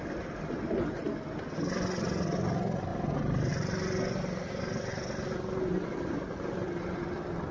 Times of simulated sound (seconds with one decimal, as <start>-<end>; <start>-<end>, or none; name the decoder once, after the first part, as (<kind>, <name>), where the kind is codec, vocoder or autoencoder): none